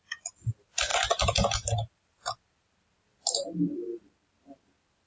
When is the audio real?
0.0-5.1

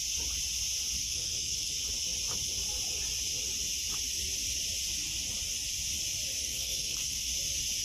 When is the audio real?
0.0-1.0; 1.7-6.4; 7.3-7.8

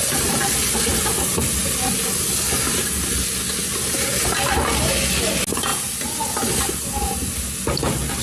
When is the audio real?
0.0-8.2

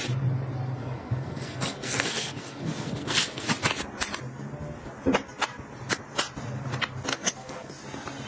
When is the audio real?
0.0-0.8; 3.5-7.1; 7.7-8.3